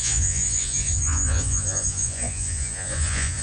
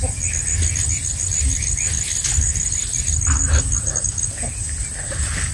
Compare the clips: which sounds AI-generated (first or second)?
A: first